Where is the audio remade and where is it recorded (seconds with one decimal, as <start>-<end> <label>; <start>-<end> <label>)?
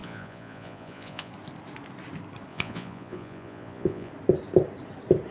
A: 0.0-1.3 remade; 1.3-2.5 recorded; 2.5-4.1 remade; 4.1-5.3 recorded